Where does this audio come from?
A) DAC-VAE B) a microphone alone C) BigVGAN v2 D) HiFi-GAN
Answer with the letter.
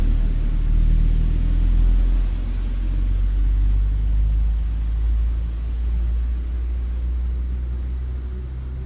B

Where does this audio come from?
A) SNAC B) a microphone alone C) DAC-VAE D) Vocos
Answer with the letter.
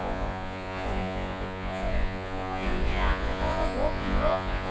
D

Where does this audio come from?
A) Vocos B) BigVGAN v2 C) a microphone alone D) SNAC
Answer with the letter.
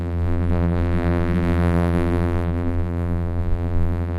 B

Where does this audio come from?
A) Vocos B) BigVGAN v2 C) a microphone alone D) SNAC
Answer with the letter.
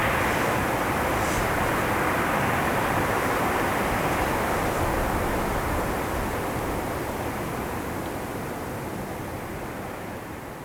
C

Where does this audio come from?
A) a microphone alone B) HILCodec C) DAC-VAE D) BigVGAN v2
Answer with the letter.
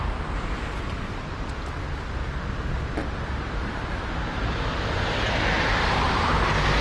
A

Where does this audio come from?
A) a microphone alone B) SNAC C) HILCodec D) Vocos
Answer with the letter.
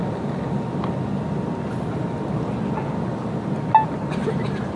A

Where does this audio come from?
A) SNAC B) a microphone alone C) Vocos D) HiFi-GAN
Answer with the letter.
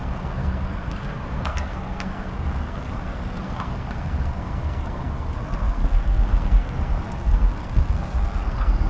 A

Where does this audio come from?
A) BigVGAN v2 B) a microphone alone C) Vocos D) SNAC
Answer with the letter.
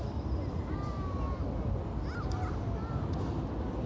B